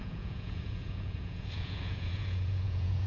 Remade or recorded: remade